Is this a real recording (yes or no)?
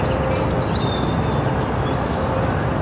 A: yes